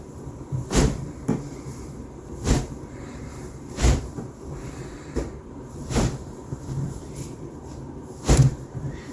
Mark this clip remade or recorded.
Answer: remade